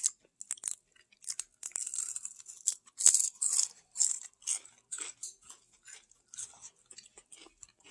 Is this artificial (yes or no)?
no